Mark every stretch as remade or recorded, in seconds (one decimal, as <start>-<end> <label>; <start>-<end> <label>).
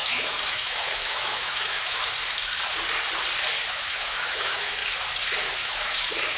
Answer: 0.0-2.0 remade; 2.0-3.7 recorded; 3.7-4.8 remade; 4.8-5.6 recorded; 5.6-6.4 remade